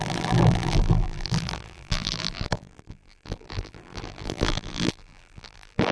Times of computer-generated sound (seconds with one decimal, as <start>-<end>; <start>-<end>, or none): 0.0-5.9